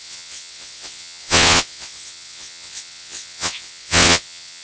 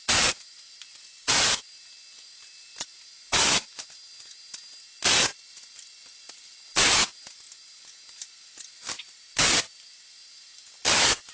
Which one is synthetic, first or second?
first